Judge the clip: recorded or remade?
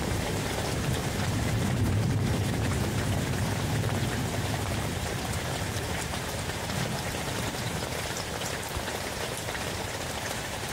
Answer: remade